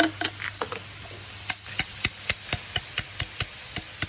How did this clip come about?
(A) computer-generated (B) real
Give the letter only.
B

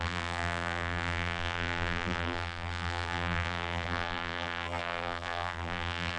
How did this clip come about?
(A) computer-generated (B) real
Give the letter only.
A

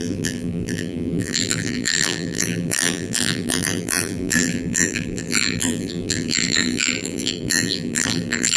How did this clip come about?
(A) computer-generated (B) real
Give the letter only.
A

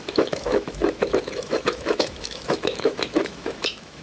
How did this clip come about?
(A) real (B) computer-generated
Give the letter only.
B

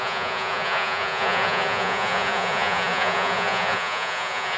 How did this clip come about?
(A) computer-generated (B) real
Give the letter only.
A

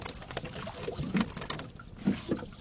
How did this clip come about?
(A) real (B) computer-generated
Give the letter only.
A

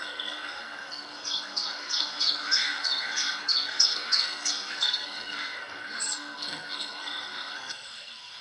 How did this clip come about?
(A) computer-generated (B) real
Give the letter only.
A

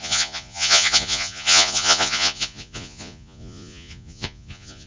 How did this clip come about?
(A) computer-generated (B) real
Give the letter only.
A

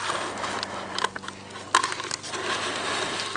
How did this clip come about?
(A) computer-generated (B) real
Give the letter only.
B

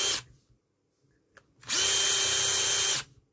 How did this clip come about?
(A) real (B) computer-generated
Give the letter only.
A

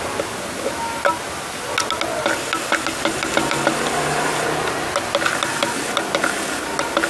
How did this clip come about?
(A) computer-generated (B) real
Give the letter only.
B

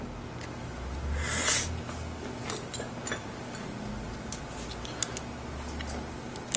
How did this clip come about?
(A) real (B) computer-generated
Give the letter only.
A